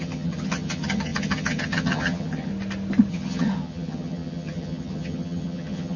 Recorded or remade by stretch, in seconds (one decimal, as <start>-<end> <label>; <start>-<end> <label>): 0.0-2.5 remade; 2.5-3.1 recorded; 3.1-6.0 remade

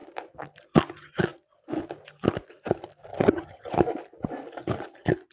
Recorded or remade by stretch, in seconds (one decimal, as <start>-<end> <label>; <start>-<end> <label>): 0.0-3.1 recorded; 3.1-3.7 remade; 3.7-5.3 recorded

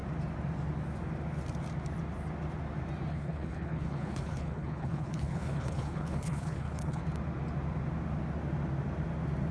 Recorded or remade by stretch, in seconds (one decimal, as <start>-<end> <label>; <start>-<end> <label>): 0.0-3.1 recorded; 3.1-7.0 remade; 7.0-9.5 recorded

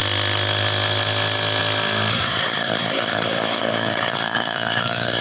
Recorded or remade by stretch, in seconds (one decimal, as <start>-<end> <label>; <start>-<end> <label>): 0.0-2.1 recorded; 2.1-5.2 remade

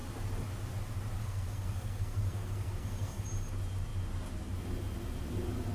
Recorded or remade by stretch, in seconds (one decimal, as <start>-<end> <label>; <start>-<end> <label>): 0.0-1.2 recorded; 1.2-3.2 remade; 3.2-5.7 recorded

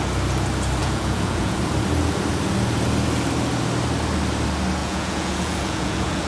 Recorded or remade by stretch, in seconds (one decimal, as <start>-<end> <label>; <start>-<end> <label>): 0.0-0.8 recorded; 0.8-1.6 remade; 1.6-4.8 recorded; 4.8-6.3 remade